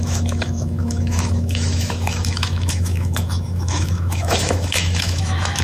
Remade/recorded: remade